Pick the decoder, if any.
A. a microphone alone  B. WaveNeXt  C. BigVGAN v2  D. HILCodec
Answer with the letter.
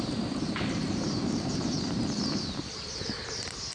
C